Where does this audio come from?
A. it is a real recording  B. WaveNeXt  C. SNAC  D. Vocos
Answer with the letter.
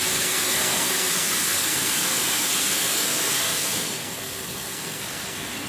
C